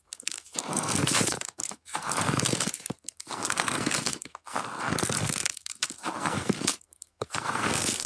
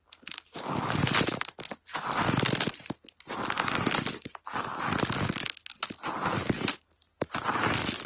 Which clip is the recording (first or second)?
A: second